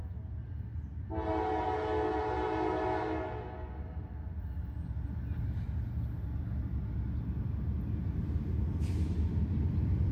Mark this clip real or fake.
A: real